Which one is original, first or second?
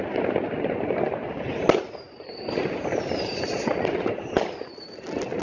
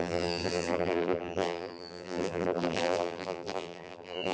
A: first